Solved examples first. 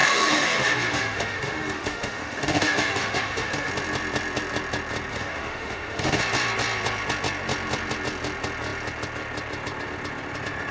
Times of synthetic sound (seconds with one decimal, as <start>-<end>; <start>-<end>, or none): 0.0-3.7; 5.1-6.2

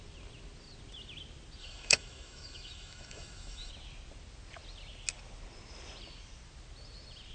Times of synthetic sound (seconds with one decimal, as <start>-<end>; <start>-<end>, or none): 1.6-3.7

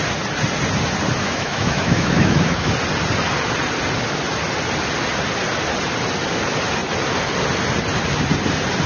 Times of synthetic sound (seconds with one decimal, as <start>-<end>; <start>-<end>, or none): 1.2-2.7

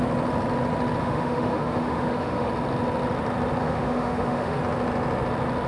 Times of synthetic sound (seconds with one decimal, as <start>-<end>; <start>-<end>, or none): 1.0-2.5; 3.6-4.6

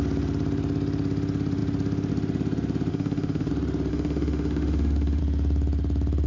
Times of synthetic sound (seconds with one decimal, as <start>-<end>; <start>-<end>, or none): 2.9-3.5; 3.9-5.2

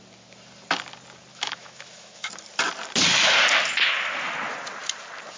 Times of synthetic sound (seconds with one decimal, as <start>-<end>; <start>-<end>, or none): 1.3-2.3

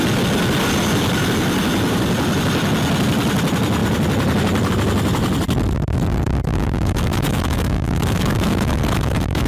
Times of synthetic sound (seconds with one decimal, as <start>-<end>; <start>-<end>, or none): 6.5-9.5

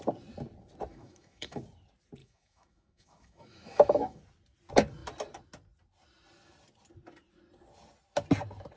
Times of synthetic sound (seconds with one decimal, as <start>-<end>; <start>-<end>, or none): 0.9-1.6; 2.2-4.2